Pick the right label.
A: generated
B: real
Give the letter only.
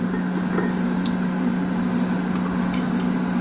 B